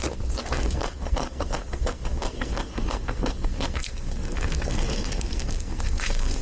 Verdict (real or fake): fake